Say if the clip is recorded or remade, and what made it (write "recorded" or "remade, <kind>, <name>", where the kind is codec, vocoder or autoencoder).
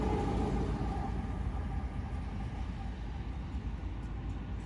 recorded